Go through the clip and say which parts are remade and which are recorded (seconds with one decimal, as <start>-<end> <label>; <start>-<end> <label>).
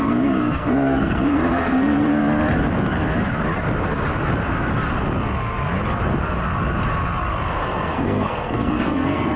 0.0-2.2 remade; 2.2-7.5 recorded; 7.5-9.4 remade